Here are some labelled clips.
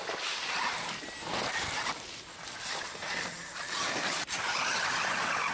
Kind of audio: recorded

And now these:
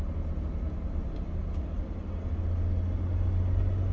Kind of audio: recorded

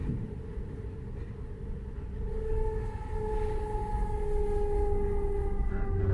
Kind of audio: recorded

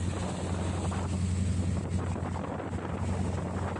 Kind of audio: recorded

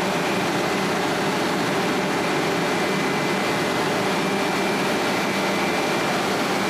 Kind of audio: recorded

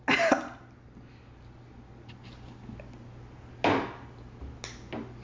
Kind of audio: recorded